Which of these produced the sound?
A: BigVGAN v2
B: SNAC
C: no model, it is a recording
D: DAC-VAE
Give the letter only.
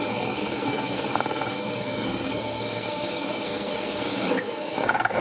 B